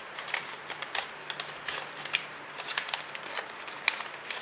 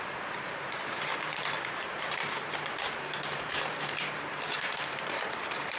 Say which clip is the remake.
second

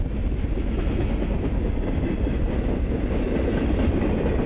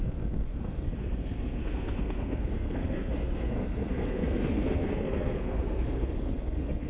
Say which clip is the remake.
second